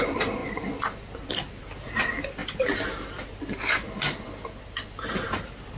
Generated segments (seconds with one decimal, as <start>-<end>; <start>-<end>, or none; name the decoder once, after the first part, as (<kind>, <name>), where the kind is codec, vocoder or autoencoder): none